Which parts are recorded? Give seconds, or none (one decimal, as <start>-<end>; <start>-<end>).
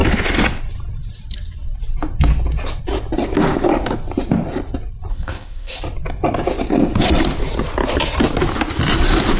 0.0-5.1; 5.8-9.4